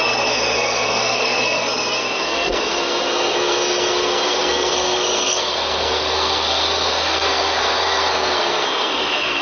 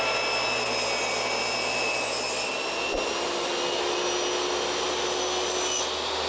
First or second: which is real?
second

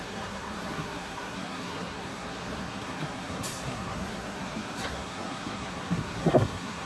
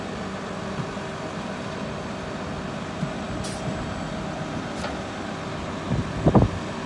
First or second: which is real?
second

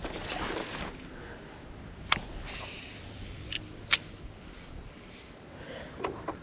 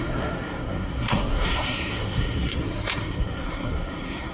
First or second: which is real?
first